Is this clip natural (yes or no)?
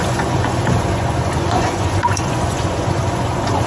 no